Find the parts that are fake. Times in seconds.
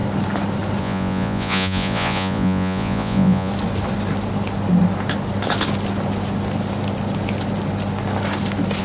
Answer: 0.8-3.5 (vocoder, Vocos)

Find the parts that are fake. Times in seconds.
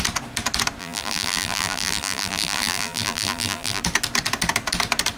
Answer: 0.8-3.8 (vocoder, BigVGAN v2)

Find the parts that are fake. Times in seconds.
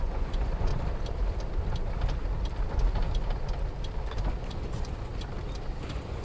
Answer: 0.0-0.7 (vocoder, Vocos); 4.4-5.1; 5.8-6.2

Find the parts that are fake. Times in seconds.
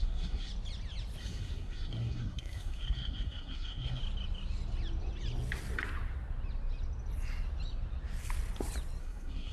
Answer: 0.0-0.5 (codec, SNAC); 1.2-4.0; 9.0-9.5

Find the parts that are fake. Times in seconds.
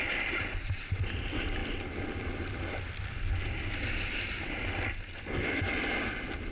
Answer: none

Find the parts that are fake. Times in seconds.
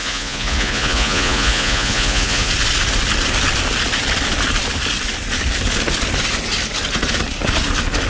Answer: 0.0-2.5 (vocoder, Vocos)